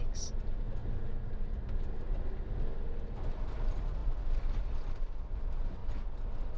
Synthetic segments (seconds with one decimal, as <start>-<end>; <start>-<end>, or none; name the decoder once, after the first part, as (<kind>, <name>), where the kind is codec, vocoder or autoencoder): none